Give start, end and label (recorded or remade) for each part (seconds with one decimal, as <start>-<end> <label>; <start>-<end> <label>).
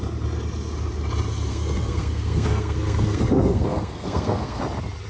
0.0-1.5 recorded; 1.5-4.6 remade; 4.6-5.1 recorded